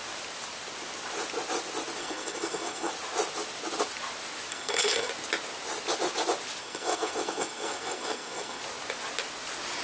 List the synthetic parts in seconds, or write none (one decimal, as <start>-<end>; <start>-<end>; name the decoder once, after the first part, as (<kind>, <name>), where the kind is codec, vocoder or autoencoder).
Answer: 2.0-2.9 (codec, SNAC); 4.5-5.1; 6.6-8.6